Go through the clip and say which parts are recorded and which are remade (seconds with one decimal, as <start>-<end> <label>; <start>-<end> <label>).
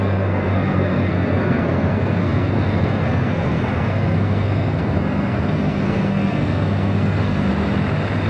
0.0-7.5 remade; 7.5-8.3 recorded